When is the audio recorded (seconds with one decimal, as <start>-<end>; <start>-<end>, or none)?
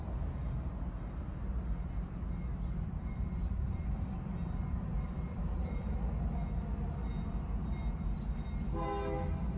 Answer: 0.0-2.5; 3.9-9.6